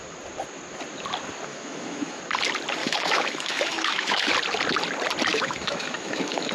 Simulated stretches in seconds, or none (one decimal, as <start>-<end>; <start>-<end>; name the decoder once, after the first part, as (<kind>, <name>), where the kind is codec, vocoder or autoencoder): 1.5-2.2 (autoencoder, DAC-VAE); 2.8-4.3; 5.3-6.5